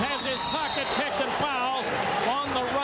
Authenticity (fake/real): real